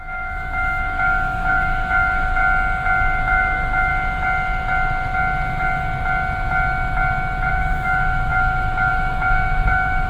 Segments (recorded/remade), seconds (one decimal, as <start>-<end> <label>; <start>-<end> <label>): 0.0-2.4 remade; 2.4-3.2 recorded; 3.2-3.9 remade; 3.9-7.5 recorded; 7.5-10.1 remade